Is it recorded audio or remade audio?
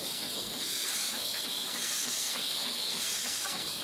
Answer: remade